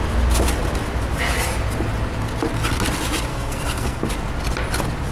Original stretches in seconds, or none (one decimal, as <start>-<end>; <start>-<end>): 0.0-3.3; 4.0-5.1